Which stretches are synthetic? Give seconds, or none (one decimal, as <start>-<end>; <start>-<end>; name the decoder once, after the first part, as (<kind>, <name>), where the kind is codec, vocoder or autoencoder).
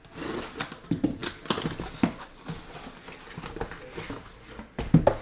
none